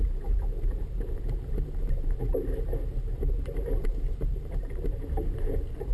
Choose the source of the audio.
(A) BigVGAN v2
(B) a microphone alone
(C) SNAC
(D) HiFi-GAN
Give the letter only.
A